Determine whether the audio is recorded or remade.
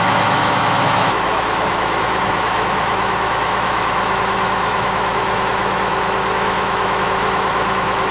remade